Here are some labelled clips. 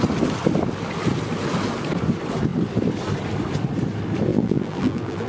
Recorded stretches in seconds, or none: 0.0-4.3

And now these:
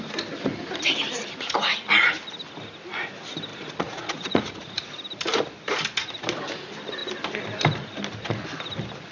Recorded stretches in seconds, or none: 0.0-3.5; 4.8-9.1

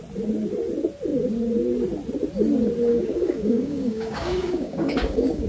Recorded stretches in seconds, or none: 0.0-2.9

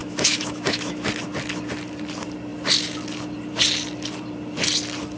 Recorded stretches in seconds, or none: 1.1-5.2

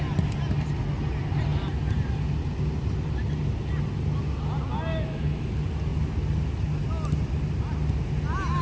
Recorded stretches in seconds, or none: 0.0-4.9; 5.5-8.6